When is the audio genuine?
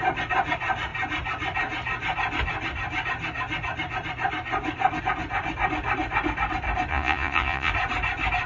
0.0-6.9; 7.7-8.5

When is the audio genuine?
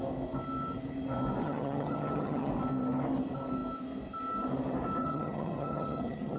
0.0-1.4; 2.5-5.0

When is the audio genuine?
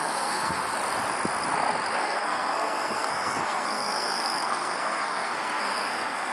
0.6-1.9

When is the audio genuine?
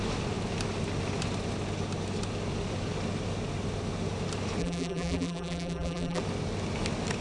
0.0-4.6; 6.2-7.2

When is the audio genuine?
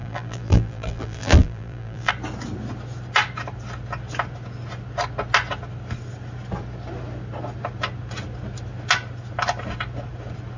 2.1-10.6